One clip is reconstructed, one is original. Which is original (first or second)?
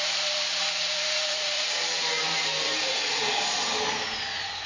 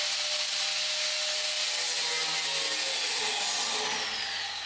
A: second